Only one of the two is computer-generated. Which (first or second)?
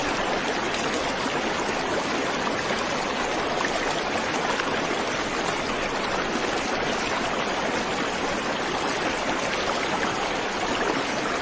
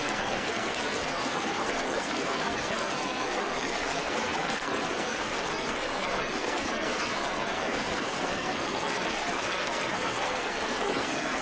second